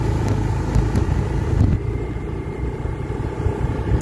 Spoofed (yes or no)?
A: no